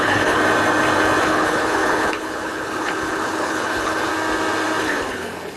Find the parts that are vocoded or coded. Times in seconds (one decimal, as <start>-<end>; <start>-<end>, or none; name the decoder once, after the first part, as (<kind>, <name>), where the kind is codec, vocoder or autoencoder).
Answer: 0.0-0.4 (codec, HILCodec); 1.2-4.1; 4.8-5.6